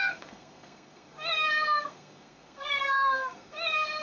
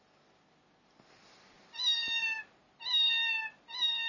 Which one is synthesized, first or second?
first